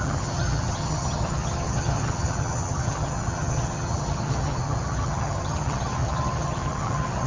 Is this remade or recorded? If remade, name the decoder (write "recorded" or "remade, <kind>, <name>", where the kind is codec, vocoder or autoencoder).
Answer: remade, vocoder, HiFi-GAN